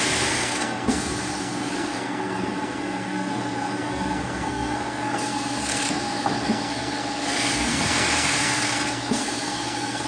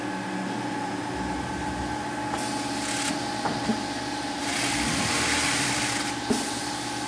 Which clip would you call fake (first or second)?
first